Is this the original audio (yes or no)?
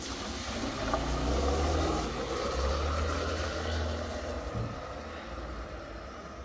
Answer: yes